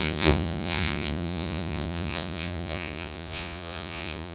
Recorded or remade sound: remade